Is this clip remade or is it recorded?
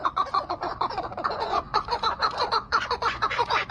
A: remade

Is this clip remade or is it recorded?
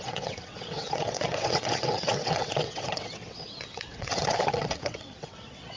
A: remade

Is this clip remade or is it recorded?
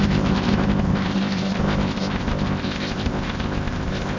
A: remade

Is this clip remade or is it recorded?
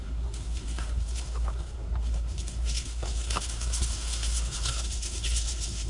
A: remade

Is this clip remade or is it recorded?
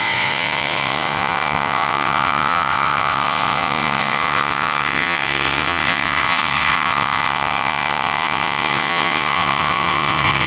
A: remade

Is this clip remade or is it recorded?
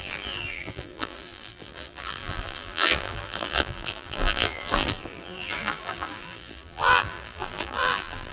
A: remade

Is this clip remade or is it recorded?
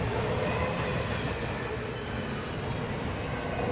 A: recorded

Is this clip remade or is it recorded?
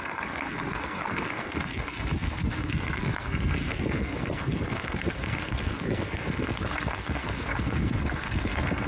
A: remade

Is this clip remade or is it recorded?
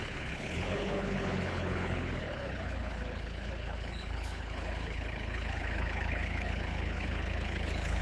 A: remade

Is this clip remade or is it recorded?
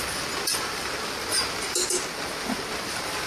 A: recorded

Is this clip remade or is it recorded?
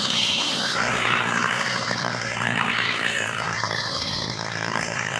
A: remade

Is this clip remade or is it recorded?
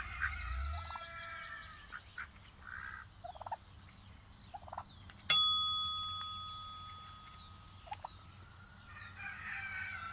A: recorded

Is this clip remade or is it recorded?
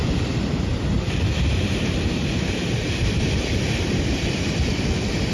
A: remade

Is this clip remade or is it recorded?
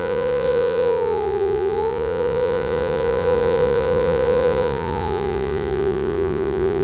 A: remade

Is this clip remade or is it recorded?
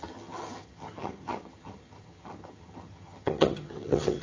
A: remade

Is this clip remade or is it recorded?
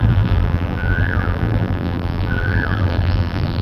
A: remade